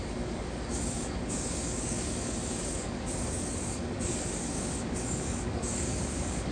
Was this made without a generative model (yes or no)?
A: no